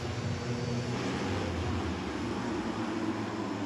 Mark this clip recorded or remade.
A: recorded